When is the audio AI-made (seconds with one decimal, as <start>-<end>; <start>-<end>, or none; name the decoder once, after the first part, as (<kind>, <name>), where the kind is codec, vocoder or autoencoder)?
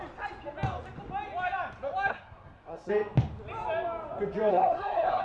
2.1-2.9 (codec, SNAC); 4.5-5.2